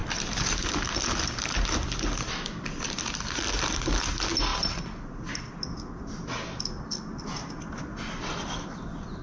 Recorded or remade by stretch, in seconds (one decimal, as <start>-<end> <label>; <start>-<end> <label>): 0.0-9.2 recorded